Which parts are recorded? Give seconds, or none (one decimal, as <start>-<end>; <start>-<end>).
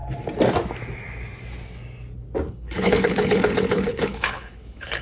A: 0.0-2.5